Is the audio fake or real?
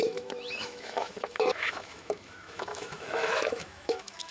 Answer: fake